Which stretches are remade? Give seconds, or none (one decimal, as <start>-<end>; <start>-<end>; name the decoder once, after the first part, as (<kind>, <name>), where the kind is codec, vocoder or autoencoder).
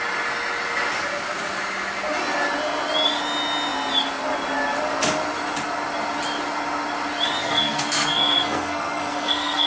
7.4-9.7 (codec, SNAC)